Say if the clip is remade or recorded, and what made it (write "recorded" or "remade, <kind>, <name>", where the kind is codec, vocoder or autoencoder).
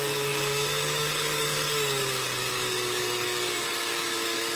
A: remade, codec, DAC